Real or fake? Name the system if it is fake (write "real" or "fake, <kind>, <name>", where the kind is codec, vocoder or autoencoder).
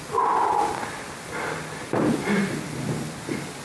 real